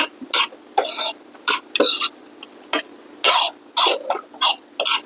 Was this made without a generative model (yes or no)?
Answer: yes